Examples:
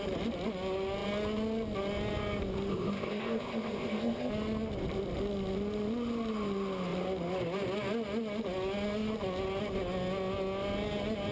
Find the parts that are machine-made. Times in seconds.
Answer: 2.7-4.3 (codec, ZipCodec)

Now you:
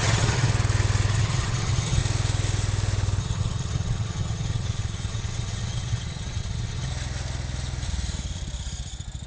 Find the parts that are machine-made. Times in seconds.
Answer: 0.0-0.5 (vocoder, HiFi-GAN); 1.1-2.0; 3.2-6.9

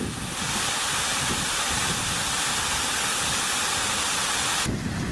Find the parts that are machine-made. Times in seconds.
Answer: 1.1-1.8 (vocoder, BigVGAN v2)

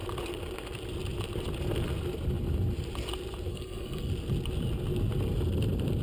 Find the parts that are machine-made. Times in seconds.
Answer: 3.5-4.1 (codec, SNAC)

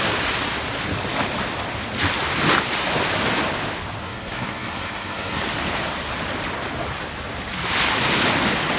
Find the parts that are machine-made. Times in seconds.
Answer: 4.0-5.4 (codec, SNAC)

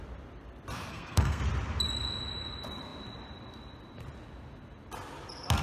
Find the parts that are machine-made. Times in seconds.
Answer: 0.9-1.4 (codec, SNAC)